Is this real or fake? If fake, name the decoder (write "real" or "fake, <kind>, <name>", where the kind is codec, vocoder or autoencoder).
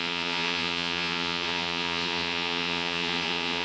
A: fake, vocoder, Vocos